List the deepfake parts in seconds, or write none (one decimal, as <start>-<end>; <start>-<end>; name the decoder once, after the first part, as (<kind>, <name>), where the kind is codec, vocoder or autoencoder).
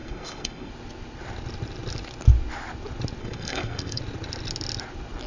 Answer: 0.0-0.7 (codec, SNAC); 3.2-4.0